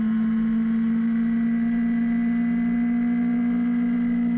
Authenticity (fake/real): real